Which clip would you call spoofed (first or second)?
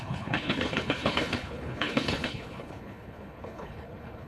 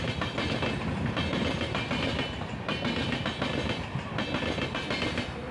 first